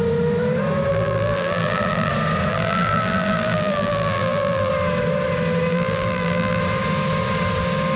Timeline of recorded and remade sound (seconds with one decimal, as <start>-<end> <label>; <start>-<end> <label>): 0.0-0.9 recorded; 0.9-2.1 remade; 2.1-2.5 recorded; 2.5-4.7 remade; 4.7-5.7 recorded; 5.7-6.6 remade; 6.6-8.0 recorded